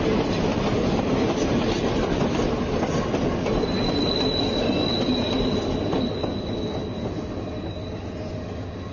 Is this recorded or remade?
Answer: recorded